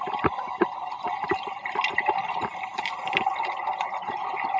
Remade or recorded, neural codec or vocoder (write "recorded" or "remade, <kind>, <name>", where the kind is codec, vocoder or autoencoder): recorded